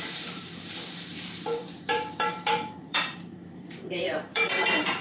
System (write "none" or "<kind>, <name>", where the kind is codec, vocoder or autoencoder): vocoder, BigVGAN v2